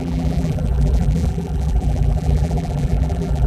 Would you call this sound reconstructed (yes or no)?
yes